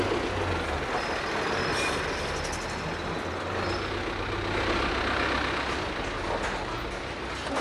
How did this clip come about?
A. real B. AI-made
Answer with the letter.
A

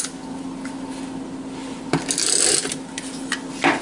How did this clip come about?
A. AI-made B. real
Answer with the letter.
B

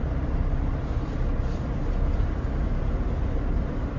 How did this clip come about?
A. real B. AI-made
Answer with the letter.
B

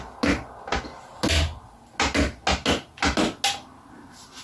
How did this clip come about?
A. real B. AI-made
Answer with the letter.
A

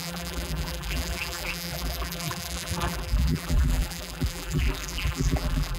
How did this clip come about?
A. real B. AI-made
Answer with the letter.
B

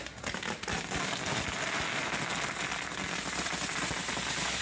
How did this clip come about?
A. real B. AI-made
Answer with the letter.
A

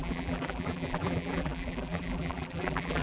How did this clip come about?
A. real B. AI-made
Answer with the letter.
B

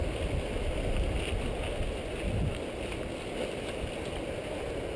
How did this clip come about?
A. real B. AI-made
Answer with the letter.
A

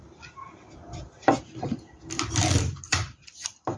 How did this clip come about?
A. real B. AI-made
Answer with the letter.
B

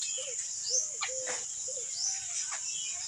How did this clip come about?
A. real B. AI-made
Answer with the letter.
A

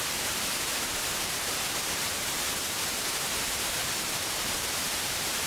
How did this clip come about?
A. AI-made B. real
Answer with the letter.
A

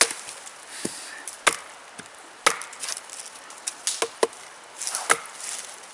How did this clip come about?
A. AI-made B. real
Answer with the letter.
B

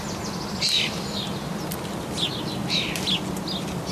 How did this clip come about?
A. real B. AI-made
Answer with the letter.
A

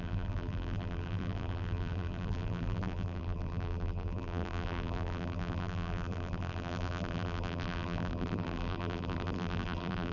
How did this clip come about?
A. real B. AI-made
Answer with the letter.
B